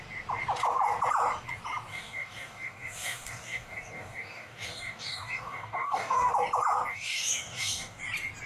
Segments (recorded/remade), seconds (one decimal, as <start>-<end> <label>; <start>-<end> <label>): 0.0-1.9 recorded; 1.9-6.3 remade; 6.3-6.9 recorded; 6.9-8.0 remade; 8.0-8.5 recorded